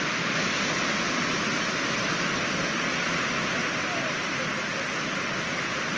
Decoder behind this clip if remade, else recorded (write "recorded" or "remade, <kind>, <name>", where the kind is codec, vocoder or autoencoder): recorded